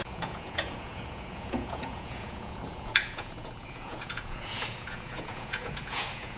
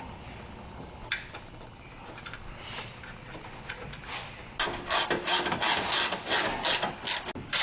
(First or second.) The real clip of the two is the second